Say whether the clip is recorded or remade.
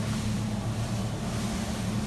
recorded